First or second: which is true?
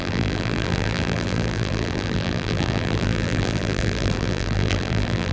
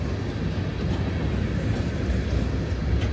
second